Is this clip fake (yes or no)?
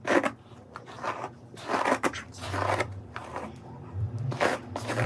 yes